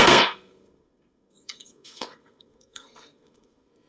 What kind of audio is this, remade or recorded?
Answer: remade